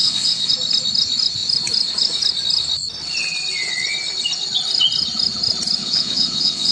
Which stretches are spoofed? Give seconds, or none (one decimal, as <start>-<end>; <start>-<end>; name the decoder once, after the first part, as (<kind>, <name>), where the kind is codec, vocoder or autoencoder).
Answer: 0.0-0.5 (vocoder, Vocos); 5.8-6.7